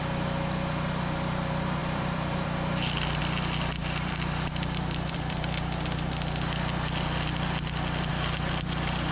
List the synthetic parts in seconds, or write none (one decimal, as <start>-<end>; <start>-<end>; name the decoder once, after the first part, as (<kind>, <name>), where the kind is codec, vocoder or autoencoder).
1.8-3.2 (vocoder, BigVGAN v2); 3.8-6.1; 8.1-9.1